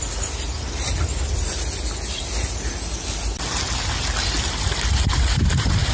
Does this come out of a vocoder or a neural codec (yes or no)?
no